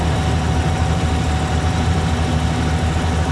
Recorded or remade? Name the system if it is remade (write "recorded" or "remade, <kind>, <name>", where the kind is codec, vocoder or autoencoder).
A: recorded